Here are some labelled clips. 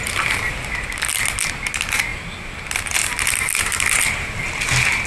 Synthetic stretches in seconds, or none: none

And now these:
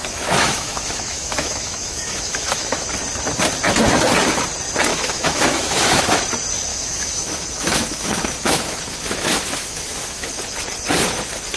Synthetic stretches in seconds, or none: 0.0-2.9; 4.9-6.2; 6.7-10.3

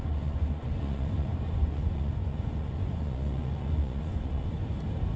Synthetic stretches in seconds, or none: 0.0-4.6

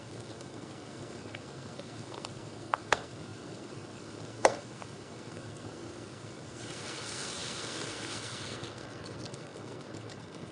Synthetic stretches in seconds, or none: 0.0-10.5

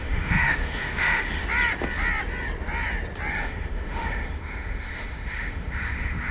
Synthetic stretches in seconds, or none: 0.0-1.4; 3.3-6.3

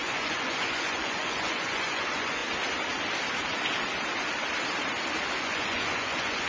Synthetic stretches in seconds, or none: 0.0-2.4; 5.4-6.5